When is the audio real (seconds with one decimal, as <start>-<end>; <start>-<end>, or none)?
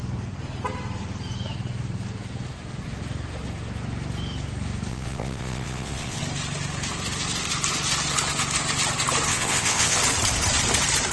0.0-4.9; 6.2-9.3; 10.0-11.1